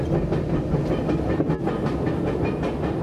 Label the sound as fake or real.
real